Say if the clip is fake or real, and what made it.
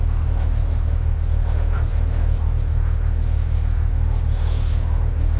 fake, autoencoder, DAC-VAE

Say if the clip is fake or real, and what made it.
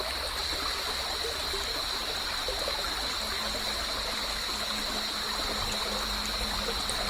real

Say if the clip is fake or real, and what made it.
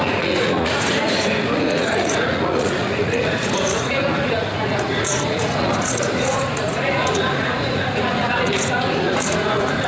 fake, vocoder, Vocos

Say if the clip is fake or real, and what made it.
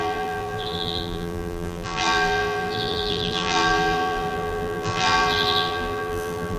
fake, vocoder, BigVGAN v2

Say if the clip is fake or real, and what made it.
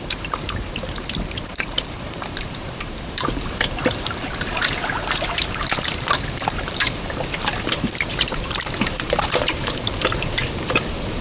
fake, vocoder, BigVGAN v2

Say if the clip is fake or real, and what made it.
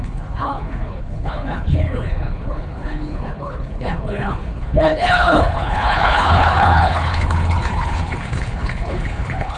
fake, codec, HILCodec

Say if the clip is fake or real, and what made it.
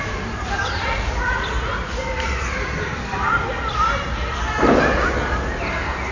real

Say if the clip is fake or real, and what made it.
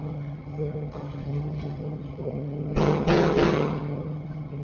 fake, vocoder, HiFi-GAN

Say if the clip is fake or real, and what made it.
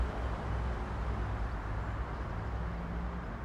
real